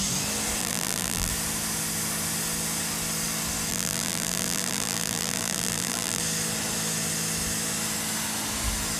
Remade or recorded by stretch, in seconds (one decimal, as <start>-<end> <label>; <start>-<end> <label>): 0.0-0.6 recorded; 0.6-1.3 remade; 1.3-3.7 recorded; 3.7-6.2 remade; 6.2-9.0 recorded